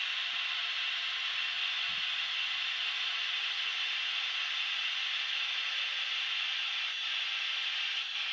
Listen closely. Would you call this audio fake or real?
real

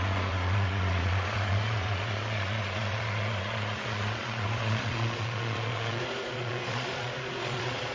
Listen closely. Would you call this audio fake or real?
fake